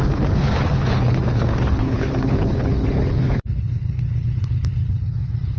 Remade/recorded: remade